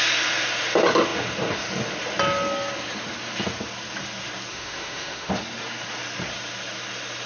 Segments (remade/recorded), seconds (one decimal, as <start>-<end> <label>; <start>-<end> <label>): 0.0-4.5 recorded; 4.5-5.3 remade; 5.3-7.3 recorded